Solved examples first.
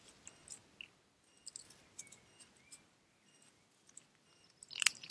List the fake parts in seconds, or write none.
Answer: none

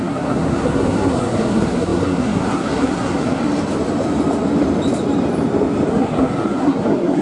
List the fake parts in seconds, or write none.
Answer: 0.0-3.4 (codec, SNAC); 5.9-7.2